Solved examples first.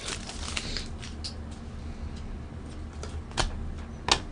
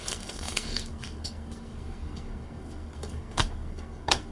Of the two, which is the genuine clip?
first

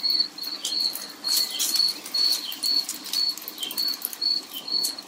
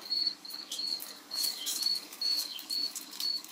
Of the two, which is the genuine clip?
first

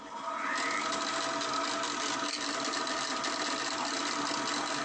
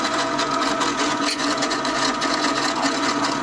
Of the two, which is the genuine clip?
first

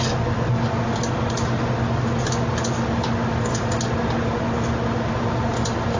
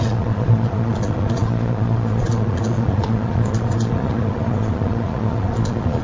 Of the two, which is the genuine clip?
first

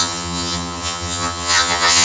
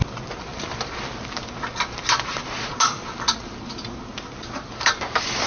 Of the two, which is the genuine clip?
second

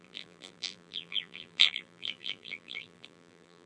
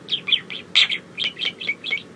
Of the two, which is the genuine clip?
second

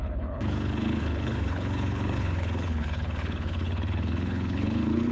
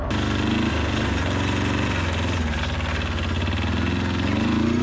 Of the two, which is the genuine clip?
second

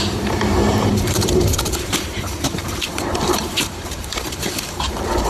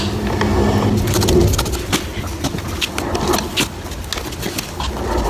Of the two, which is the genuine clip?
second